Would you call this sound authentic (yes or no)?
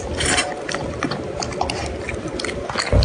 yes